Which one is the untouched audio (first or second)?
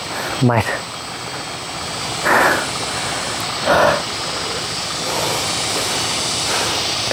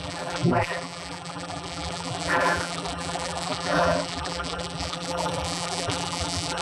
first